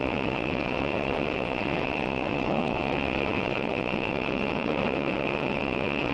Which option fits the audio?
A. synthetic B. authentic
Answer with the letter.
A